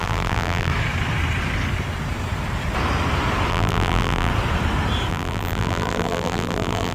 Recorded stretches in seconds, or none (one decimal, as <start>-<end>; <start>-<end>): 0.7-3.5; 4.3-5.1